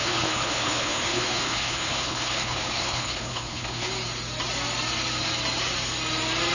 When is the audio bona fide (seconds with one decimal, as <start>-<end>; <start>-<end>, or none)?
3.9-6.5